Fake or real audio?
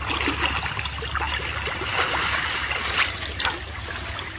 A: real